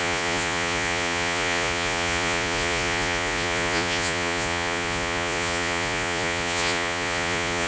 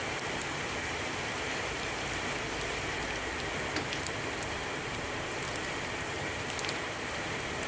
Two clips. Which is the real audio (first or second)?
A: second